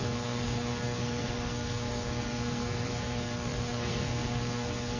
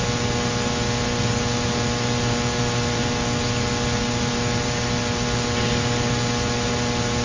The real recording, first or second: second